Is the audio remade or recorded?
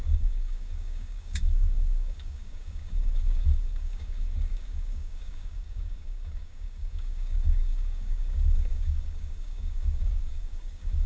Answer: remade